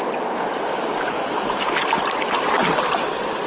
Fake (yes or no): no